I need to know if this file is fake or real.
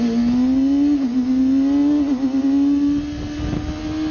real